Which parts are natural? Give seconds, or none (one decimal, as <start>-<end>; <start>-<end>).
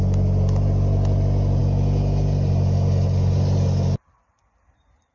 0.0-5.1